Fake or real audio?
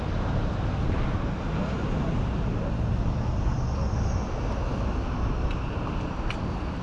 real